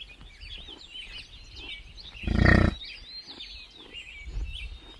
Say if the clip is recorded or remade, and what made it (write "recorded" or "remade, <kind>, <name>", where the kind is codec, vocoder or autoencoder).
recorded